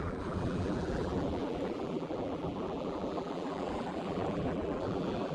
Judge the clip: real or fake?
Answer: fake